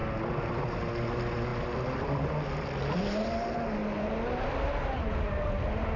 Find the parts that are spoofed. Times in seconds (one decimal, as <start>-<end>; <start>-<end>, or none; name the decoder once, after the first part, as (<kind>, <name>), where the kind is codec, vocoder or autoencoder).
none